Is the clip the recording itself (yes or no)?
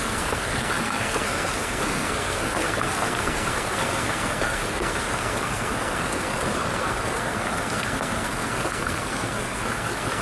no